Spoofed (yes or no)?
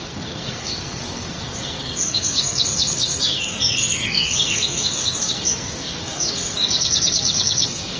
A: yes